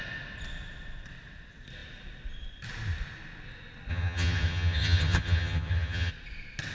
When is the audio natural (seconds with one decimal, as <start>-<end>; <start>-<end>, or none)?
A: 0.0-3.9; 6.1-6.7